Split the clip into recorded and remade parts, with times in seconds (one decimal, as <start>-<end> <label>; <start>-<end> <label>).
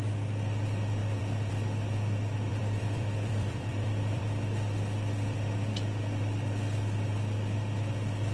0.0-1.0 recorded; 1.0-1.5 remade; 1.5-2.5 recorded; 2.5-4.2 remade; 4.2-8.3 recorded